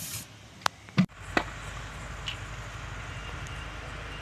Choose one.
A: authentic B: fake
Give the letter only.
A